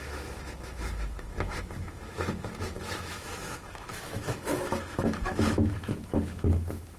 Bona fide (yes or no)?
no